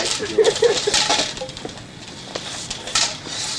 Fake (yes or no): no